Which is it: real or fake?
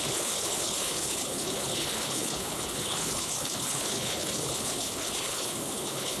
fake